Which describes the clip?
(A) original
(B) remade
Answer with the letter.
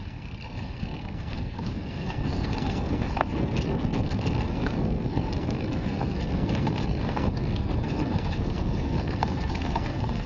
B